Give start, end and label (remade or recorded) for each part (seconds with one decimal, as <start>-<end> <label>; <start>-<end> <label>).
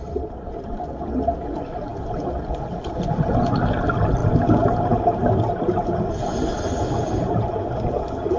0.0-8.4 recorded